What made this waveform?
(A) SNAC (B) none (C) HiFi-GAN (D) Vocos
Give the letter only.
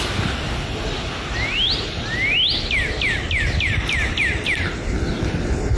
B